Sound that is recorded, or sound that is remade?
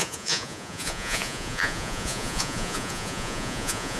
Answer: remade